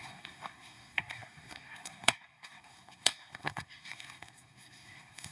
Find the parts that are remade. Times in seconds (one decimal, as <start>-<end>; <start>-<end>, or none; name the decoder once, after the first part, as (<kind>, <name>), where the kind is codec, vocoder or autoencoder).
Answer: 0.0-5.3 (codec, SNAC)